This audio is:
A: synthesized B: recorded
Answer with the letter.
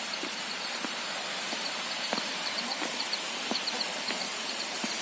A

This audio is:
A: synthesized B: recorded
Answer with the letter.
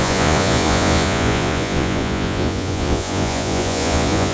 A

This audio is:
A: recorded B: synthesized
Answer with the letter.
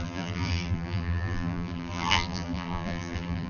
B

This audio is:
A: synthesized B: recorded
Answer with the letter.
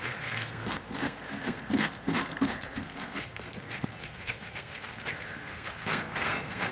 A